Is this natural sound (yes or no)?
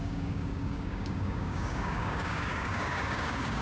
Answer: no